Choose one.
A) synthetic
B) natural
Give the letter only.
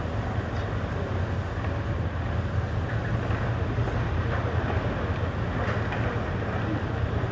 B